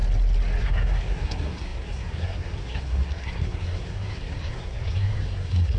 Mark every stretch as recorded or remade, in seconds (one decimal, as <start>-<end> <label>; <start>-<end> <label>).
0.0-0.6 recorded; 0.6-5.8 remade